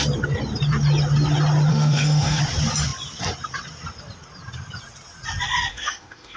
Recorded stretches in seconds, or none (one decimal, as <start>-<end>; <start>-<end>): 0.0-1.7; 2.4-5.7